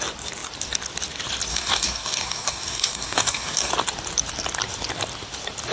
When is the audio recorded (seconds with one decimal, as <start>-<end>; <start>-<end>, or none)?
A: 0.0-1.5; 3.7-5.7